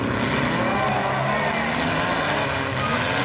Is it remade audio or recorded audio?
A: recorded